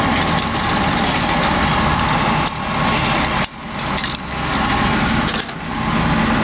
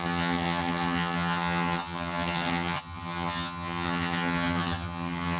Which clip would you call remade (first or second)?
second